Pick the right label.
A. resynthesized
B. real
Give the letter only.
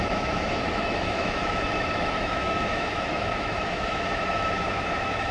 A